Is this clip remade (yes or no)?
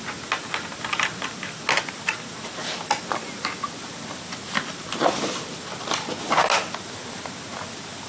no